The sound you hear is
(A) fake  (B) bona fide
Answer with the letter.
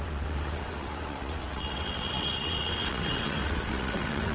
A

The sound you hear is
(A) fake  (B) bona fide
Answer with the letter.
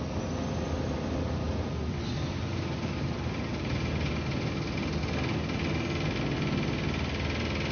B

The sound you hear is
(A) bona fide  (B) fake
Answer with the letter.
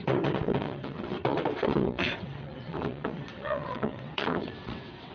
B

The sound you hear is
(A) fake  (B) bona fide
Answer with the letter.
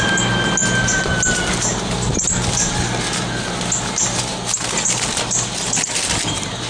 B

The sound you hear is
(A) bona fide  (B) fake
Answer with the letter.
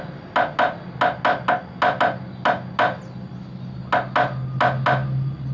A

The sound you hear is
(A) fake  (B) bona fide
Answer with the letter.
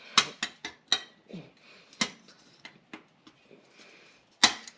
B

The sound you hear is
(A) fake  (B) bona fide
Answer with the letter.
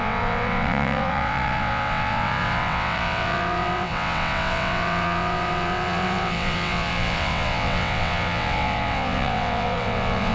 A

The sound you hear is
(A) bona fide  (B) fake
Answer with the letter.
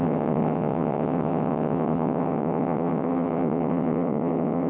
B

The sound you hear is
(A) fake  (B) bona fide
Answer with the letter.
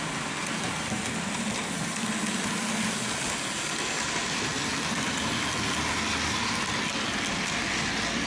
B